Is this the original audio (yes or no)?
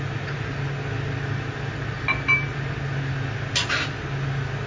yes